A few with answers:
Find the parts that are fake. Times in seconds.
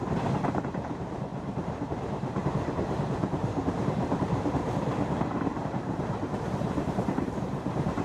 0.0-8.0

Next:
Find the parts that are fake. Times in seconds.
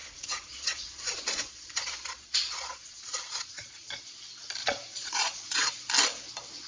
0.0-4.0; 4.6-5.7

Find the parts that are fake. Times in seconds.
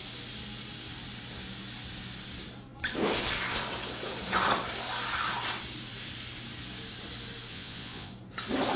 7.5-8.1